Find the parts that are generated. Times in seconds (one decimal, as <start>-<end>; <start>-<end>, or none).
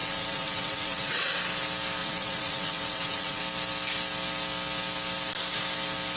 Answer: 0.0-1.3; 2.0-3.4